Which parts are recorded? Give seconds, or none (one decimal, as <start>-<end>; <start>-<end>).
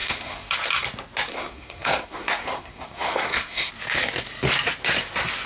0.5-1.3; 3.7-5.5